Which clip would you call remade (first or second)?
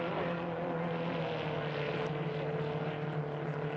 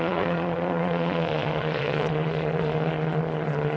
second